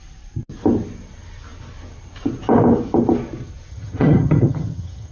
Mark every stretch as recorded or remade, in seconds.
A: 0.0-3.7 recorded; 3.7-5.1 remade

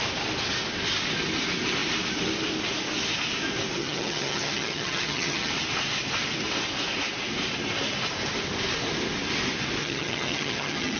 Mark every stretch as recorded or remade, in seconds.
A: 0.0-3.8 recorded; 3.8-5.5 remade; 5.5-9.8 recorded; 9.8-11.0 remade